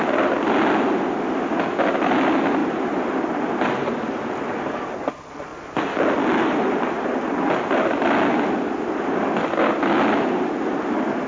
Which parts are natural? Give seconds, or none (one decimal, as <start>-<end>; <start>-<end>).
0.0-11.3